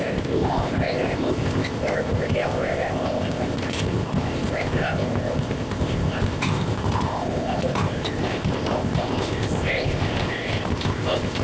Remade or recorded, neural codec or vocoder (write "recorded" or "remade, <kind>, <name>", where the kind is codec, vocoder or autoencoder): remade, codec, ZipCodec